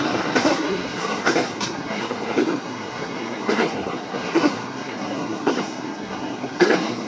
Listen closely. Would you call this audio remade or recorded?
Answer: remade